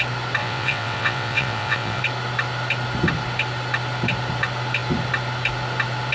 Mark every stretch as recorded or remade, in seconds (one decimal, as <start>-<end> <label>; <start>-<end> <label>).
0.0-0.4 recorded; 0.4-2.0 remade; 2.0-6.1 recorded